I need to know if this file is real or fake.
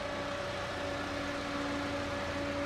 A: real